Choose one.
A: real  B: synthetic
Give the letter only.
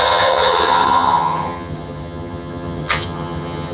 B